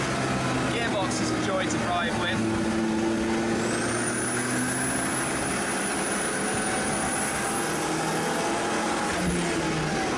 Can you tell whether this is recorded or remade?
recorded